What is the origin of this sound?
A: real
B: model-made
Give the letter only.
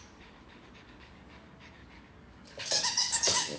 B